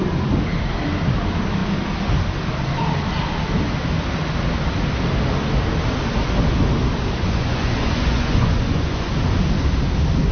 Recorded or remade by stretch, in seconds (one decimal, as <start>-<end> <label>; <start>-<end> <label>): 0.0-7.2 recorded; 7.2-9.1 remade; 9.1-10.3 recorded